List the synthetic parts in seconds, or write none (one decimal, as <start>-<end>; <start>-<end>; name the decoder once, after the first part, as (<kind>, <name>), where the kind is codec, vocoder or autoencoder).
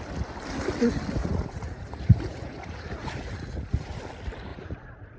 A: 1.2-4.0 (vocoder, Vocos); 4.5-5.2